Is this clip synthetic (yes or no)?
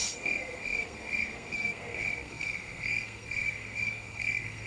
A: yes